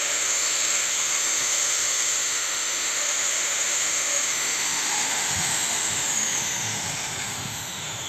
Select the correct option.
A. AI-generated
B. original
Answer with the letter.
A